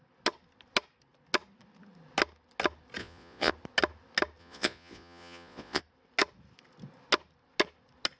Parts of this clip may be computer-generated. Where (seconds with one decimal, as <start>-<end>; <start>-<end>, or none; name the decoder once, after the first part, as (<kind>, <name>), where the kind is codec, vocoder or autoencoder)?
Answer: 3.0-3.5 (vocoder, Vocos); 4.4-5.8